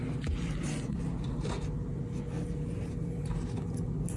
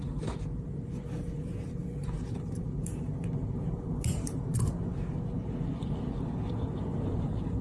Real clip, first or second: first